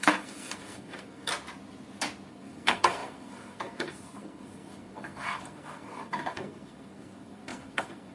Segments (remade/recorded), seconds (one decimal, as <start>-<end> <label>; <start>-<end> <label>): 0.0-1.3 remade; 1.3-2.3 recorded; 2.3-8.1 remade